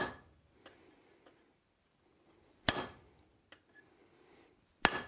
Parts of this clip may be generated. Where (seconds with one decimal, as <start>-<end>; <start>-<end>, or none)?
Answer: none